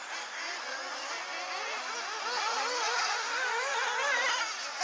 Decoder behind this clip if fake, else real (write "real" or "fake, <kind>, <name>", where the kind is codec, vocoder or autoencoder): real